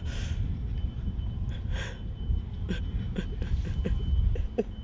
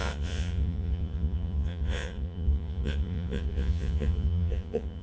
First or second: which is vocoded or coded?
second